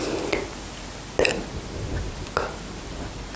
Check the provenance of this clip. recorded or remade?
recorded